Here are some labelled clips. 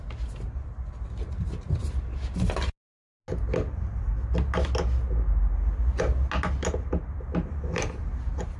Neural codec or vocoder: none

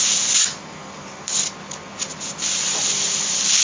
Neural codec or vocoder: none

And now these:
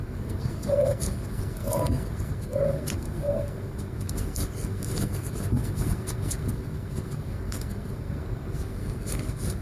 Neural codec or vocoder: codec, SNAC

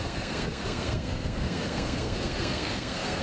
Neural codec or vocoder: codec, SNAC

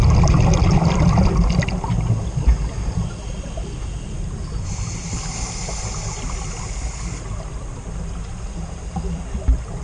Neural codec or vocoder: none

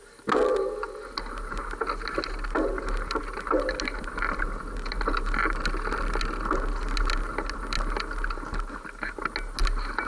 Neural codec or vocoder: none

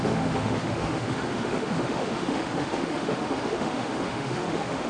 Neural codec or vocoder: autoencoder, DAC-VAE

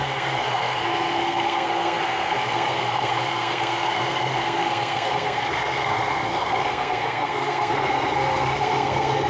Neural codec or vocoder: codec, SNAC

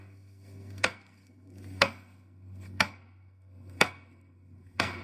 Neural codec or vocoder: codec, SNAC